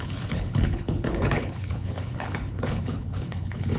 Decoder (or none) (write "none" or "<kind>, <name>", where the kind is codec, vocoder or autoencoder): codec, HILCodec